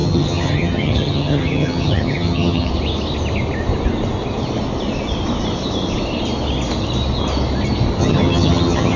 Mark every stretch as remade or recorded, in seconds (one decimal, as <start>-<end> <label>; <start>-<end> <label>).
0.0-2.7 remade; 2.7-8.0 recorded; 8.0-9.0 remade